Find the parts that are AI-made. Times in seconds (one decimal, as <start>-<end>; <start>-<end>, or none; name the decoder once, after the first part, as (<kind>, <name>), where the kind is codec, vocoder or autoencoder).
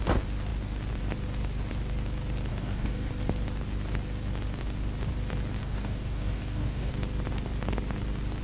2.5-3.1 (codec, DAC); 5.6-6.9